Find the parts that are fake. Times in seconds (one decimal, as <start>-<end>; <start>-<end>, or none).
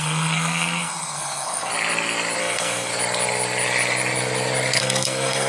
0.0-1.7; 2.4-2.9; 4.8-5.5